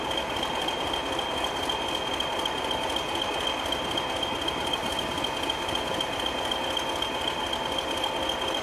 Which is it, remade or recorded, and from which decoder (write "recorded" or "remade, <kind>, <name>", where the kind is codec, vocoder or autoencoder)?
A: recorded